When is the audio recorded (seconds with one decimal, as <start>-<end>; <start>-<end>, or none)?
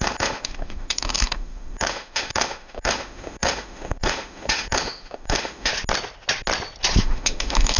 5.7-7.0